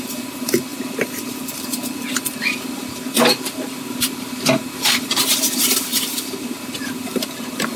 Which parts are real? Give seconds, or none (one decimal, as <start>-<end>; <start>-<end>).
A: none

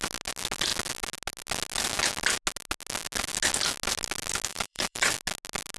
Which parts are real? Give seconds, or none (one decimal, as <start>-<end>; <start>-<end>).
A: 0.0-4.5; 5.1-5.8

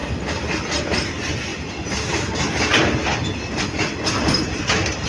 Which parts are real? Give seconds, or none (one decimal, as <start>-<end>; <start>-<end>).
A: 0.0-5.1

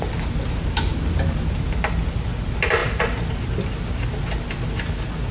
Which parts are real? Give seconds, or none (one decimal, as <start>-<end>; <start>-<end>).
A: 0.0-5.3

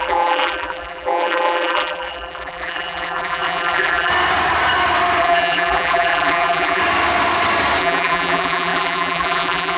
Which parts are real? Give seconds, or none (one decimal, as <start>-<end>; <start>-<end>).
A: 4.1-5.2; 6.8-7.8

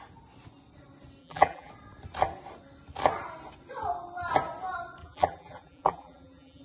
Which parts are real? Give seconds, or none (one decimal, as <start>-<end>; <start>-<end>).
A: 0.0-1.2; 1.7-5.0

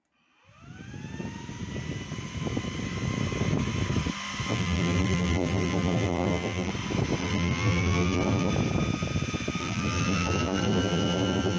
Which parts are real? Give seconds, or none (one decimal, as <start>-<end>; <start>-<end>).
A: 0.0-4.5; 6.7-7.2; 8.5-9.6